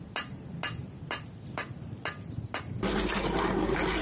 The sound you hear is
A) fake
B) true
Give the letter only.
B